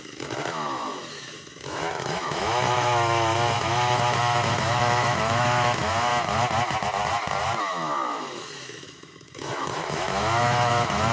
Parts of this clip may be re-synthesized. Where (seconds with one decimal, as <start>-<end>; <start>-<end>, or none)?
0.0-6.1; 7.6-11.1